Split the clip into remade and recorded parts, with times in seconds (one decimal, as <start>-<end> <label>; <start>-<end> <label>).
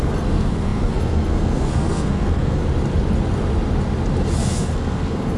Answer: 0.0-2.6 remade; 2.6-4.4 recorded; 4.4-5.4 remade